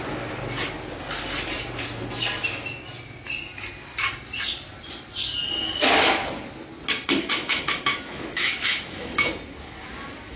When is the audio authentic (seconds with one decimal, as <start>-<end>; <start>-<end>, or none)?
0.0-7.2; 9.3-10.4